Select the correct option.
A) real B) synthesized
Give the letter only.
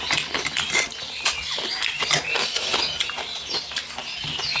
A